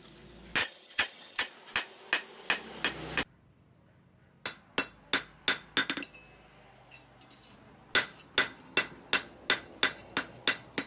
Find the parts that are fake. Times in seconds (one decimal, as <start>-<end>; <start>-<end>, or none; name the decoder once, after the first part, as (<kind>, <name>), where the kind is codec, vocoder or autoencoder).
0.6-1.5 (vocoder, HiFi-GAN)